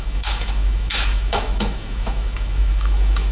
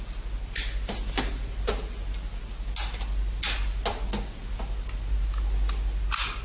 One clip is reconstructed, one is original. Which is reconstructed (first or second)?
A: first